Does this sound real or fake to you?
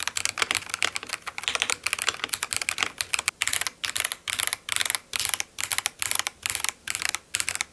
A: real